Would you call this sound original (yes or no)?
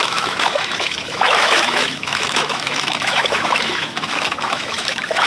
no